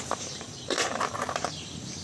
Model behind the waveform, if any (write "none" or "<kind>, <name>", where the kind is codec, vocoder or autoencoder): vocoder, BigVGAN v2